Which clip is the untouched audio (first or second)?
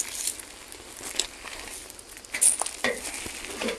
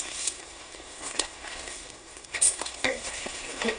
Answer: first